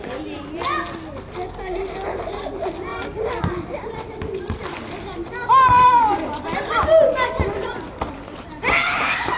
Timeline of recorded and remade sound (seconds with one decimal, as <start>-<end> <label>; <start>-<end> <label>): 0.0-9.4 recorded